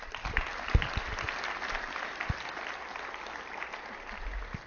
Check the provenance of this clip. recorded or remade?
recorded